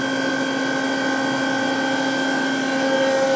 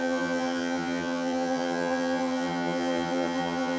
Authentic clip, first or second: first